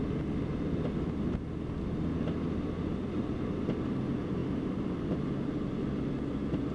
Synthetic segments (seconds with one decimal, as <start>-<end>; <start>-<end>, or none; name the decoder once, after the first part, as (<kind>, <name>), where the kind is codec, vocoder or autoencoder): none